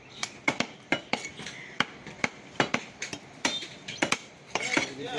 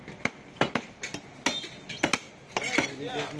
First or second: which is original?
second